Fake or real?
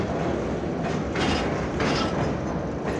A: real